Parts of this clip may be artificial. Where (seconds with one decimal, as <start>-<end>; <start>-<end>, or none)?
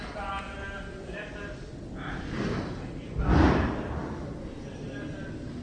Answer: none